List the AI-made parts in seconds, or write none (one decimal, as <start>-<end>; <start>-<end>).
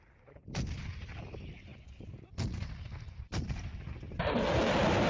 none